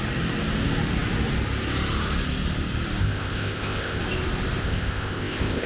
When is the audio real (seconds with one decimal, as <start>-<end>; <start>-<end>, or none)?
0.0-3.0; 4.0-4.6